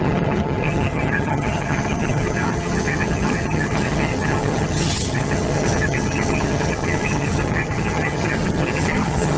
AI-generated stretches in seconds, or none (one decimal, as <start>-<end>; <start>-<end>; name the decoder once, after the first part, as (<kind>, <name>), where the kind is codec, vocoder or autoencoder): 0.0-9.4 (vocoder, HiFi-GAN)